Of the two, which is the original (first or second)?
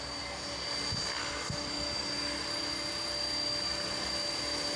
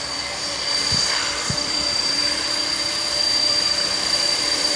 first